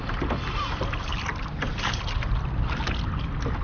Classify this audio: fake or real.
real